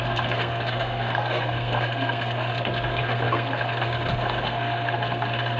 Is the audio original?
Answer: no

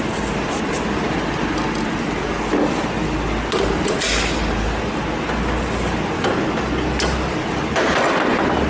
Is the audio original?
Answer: yes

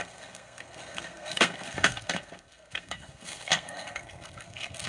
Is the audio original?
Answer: no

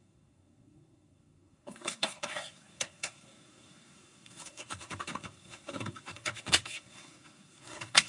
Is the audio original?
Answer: no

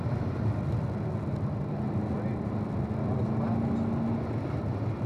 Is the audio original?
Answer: yes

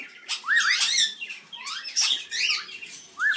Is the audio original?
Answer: no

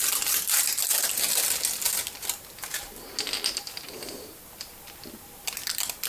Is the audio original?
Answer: yes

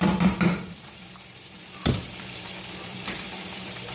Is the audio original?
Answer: no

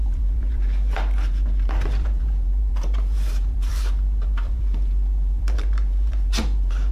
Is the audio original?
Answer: no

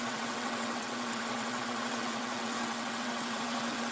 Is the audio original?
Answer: no